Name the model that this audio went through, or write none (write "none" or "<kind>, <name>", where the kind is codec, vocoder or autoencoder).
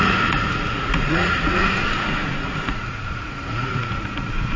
vocoder, Vocos